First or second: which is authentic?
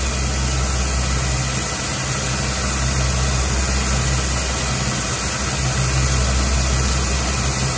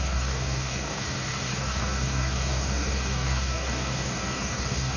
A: first